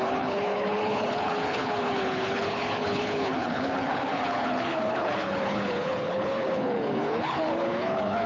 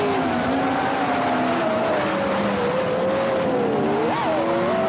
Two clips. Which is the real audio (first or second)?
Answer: second